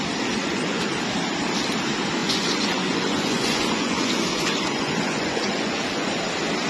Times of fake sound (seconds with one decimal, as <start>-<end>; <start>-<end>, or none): 0.4-0.9; 2.2-6.2